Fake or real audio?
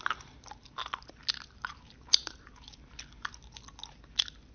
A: real